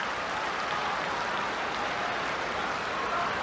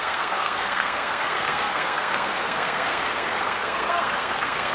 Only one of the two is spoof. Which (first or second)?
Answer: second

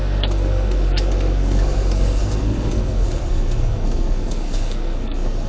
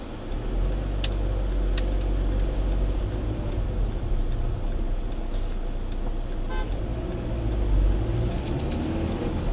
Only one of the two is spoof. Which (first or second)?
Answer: first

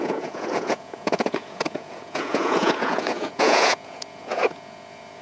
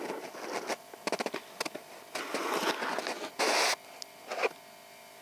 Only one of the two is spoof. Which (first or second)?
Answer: first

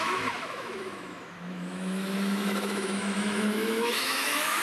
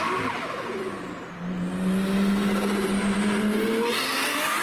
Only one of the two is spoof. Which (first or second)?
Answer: first